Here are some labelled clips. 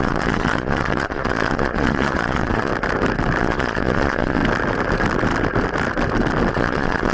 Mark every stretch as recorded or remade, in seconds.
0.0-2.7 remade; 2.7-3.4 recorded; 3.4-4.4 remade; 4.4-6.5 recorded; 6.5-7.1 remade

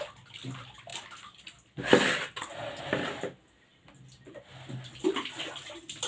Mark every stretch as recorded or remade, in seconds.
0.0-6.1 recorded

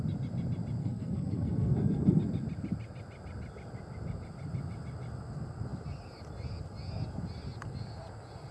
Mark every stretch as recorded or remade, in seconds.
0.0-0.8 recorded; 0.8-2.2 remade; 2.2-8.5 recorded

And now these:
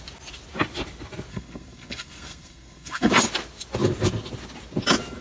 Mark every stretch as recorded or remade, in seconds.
0.0-1.3 recorded; 1.3-3.1 remade; 3.1-5.2 recorded

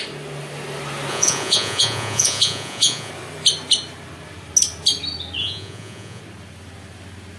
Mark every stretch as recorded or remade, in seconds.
0.0-1.1 recorded; 1.1-3.1 remade; 3.1-5.4 recorded; 5.4-6.2 remade; 6.2-7.4 recorded